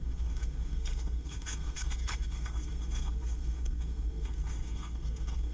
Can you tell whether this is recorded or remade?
remade